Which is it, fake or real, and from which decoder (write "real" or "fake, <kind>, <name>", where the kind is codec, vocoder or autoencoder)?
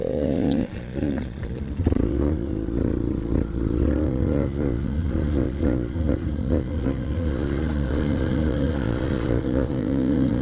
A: fake, vocoder, Vocos